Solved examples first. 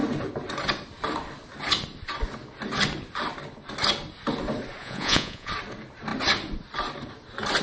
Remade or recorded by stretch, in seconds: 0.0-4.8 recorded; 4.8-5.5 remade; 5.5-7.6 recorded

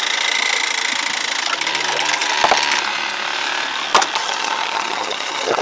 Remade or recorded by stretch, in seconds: 0.0-4.2 recorded; 4.2-5.6 remade

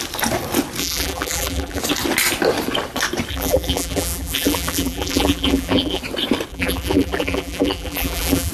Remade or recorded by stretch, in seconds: 0.0-0.8 recorded; 0.8-1.8 remade; 1.8-3.3 recorded; 3.3-6.0 remade; 6.0-6.5 recorded; 6.5-8.5 remade

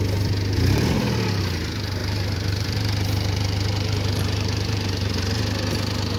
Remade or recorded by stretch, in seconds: 0.0-2.0 recorded; 2.0-5.4 remade; 5.4-6.2 recorded

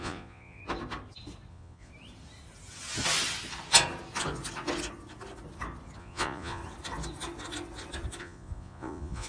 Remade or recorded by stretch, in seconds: 0.0-0.6 remade; 0.6-1.5 recorded; 1.5-1.9 remade; 1.9-6.0 recorded; 6.0-6.6 remade; 6.6-8.2 recorded; 8.2-9.3 remade

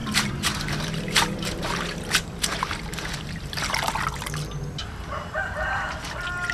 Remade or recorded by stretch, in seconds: 0.0-3.9 remade; 3.9-4.8 recorded; 4.8-6.0 remade; 6.0-6.5 recorded

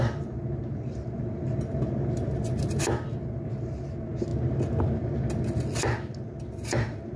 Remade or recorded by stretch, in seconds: 0.0-7.2 recorded

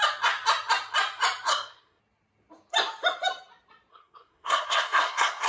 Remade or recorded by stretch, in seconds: 0.0-1.5 recorded; 1.5-2.0 remade; 2.0-3.9 recorded; 3.9-5.5 remade